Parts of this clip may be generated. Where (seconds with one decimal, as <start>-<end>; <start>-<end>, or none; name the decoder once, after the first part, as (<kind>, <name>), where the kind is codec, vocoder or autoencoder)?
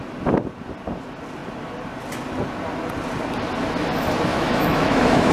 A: 4.3-5.3 (autoencoder, DAC-VAE)